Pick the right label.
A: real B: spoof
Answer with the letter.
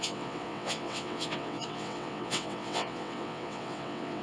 B